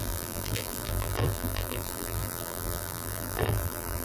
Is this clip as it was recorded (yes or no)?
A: no